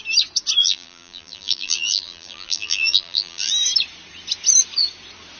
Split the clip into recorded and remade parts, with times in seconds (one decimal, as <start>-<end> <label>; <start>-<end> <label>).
0.0-0.6 recorded; 0.6-3.5 remade; 3.5-5.4 recorded